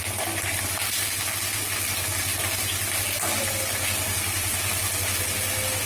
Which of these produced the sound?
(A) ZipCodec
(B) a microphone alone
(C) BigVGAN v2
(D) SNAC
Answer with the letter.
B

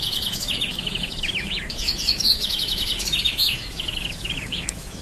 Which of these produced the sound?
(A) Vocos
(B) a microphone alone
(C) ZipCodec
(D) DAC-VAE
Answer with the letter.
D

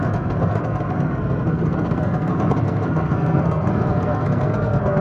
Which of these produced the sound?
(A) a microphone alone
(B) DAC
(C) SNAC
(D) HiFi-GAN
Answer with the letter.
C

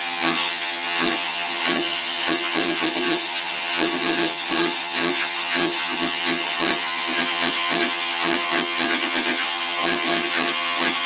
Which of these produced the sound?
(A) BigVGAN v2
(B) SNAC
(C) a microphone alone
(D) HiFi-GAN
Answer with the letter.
D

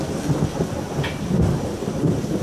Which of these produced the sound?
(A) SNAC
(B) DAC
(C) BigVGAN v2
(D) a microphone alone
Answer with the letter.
D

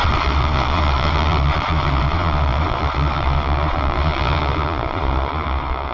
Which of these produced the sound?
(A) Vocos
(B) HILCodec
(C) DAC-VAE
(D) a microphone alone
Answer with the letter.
A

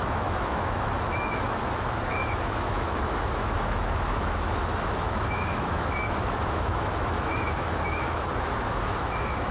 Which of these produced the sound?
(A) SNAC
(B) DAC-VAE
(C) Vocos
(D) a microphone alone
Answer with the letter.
B